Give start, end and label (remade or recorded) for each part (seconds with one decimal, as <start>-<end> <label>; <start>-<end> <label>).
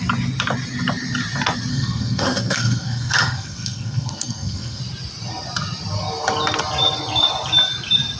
0.0-1.7 recorded; 1.7-4.8 remade; 4.8-8.2 recorded